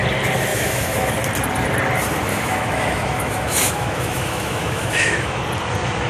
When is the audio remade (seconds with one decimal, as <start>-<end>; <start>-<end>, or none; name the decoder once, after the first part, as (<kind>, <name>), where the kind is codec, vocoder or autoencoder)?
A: 0.5-1.1 (autoencoder, DAC-VAE); 2.3-5.4